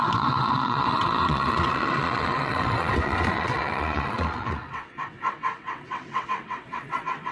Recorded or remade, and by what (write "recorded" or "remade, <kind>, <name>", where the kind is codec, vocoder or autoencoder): remade, vocoder, WaveNeXt